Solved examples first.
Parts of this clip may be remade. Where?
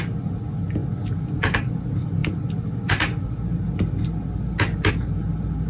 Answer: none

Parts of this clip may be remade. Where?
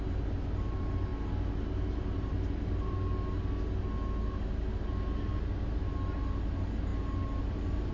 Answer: none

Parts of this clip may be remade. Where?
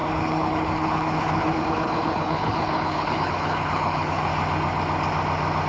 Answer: 0.0-4.3 (codec, HILCodec)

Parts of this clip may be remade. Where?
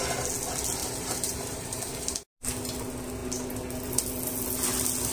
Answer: 0.8-1.9 (vocoder, BigVGAN v2)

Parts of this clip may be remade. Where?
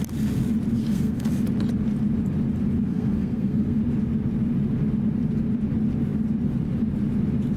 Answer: 0.8-1.3 (codec, SNAC); 2.9-3.8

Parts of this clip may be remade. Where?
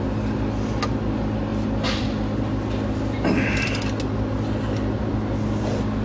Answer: none